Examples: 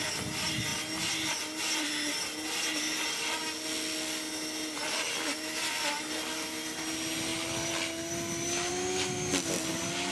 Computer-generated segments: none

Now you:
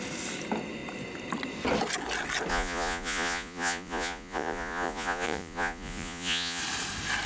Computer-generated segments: 2.5-6.6 (vocoder, Vocos)

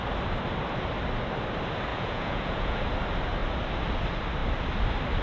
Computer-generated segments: 1.9-2.8 (vocoder, Vocos)

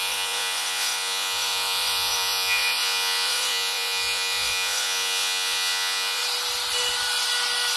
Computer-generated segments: 0.0-6.2 (vocoder, Vocos)